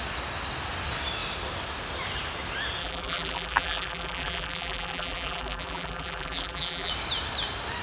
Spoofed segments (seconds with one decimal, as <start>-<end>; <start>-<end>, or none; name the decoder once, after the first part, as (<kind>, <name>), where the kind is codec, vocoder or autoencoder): 2.8-6.9 (vocoder, BigVGAN v2)